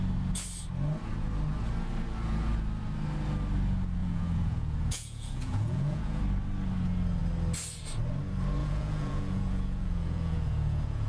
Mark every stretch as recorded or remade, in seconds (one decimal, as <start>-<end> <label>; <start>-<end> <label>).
0.0-4.0 recorded; 4.0-6.2 remade; 6.2-8.6 recorded; 8.6-11.1 remade

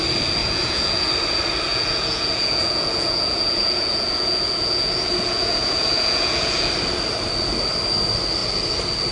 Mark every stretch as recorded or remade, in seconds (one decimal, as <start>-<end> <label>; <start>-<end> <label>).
0.0-0.4 recorded; 0.4-1.1 remade; 1.1-1.7 recorded; 1.7-6.7 remade; 6.7-9.1 recorded

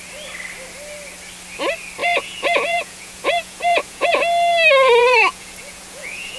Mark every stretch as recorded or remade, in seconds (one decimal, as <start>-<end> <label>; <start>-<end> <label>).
0.0-2.0 recorded; 2.0-4.2 remade; 4.2-5.0 recorded; 5.0-6.4 remade